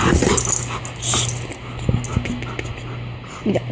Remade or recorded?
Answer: recorded